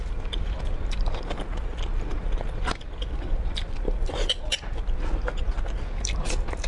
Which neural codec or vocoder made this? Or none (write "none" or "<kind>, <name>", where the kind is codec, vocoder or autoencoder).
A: none